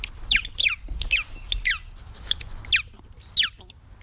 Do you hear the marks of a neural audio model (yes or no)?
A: no